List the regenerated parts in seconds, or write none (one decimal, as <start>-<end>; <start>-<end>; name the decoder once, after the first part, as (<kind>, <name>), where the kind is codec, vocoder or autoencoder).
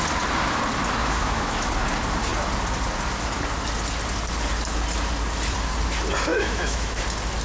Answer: 1.0-1.7 (autoencoder, DAC-VAE); 6.3-7.0